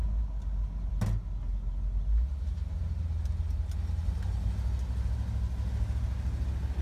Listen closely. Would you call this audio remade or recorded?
recorded